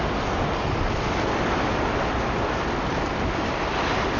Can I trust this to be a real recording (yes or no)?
yes